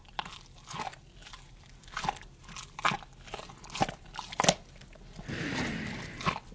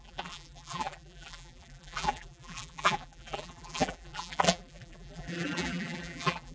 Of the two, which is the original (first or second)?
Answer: first